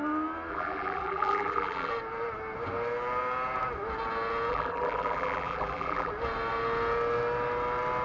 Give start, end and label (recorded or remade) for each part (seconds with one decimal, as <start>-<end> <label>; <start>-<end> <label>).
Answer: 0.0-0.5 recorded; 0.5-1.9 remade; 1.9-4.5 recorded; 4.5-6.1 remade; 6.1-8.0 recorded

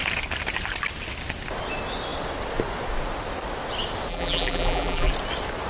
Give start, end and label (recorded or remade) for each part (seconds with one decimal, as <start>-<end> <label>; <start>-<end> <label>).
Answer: 0.0-4.1 recorded; 4.1-5.1 remade; 5.1-5.7 recorded

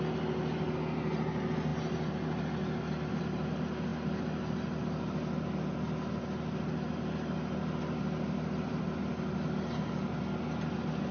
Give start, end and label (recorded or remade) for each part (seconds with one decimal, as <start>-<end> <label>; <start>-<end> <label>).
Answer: 0.0-11.1 recorded

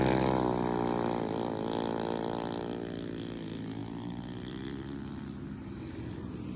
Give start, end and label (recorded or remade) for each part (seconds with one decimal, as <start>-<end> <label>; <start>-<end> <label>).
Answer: 0.0-3.8 recorded; 3.8-6.6 remade